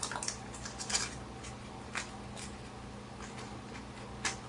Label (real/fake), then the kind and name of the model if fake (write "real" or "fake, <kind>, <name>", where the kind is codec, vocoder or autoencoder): real